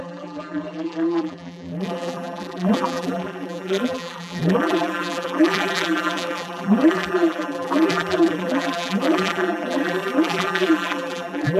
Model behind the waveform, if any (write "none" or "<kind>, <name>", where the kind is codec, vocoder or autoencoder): vocoder, BigVGAN v2